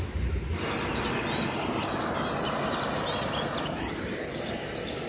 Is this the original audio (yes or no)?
yes